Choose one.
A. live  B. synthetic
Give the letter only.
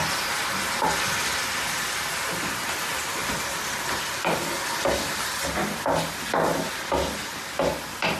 A